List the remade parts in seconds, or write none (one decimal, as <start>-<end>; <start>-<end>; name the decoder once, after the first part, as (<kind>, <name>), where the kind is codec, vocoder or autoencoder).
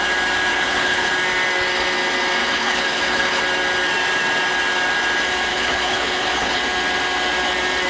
0.5-1.1 (codec, HILCodec); 2.4-3.4; 5.5-6.6